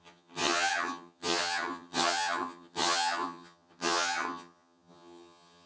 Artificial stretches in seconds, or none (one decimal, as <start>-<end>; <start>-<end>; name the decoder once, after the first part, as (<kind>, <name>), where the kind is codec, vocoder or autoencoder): 0.0-5.7 (vocoder, HiFi-GAN)

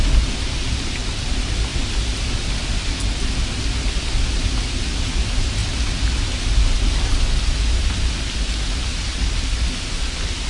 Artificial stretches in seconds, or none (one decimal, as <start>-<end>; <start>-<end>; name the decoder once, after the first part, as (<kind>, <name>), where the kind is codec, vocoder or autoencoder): 8.9-9.4 (vocoder, BigVGAN v2)

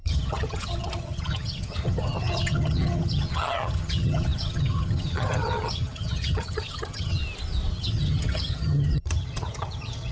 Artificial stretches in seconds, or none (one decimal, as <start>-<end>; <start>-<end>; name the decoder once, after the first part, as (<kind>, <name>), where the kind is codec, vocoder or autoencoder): 0.0-7.2 (vocoder, HiFi-GAN); 7.7-10.1

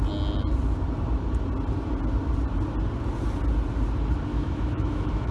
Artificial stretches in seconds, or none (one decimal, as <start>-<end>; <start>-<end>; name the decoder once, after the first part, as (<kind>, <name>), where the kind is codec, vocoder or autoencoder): 4.3-5.3 (autoencoder, DAC-VAE)